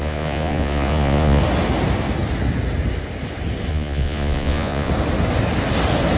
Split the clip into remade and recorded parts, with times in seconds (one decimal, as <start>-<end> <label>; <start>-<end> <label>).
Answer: 0.0-1.4 remade; 1.4-3.7 recorded; 3.7-4.9 remade; 4.9-6.2 recorded